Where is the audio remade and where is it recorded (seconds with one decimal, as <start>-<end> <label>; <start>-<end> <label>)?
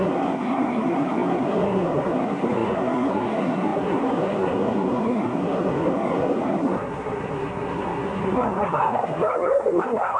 0.0-10.2 remade